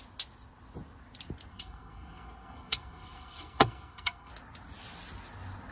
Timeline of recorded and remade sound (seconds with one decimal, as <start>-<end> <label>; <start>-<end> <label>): 0.0-1.5 recorded; 1.5-4.3 remade; 4.3-5.7 recorded